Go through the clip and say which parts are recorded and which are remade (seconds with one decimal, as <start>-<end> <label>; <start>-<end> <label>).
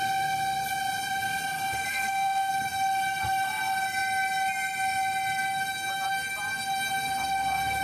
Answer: 0.0-1.8 recorded; 1.8-2.5 remade; 2.5-7.8 recorded